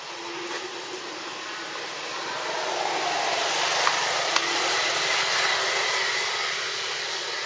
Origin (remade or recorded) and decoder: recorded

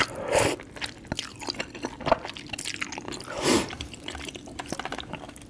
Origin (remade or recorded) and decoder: recorded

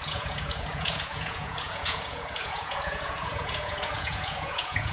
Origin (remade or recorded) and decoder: remade, vocoder, Vocos